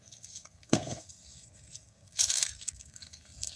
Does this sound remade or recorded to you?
remade